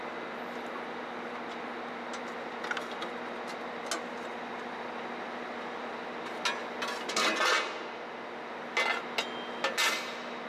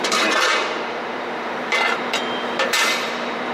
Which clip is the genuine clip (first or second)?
first